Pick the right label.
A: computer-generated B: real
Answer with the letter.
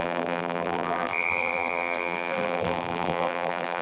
A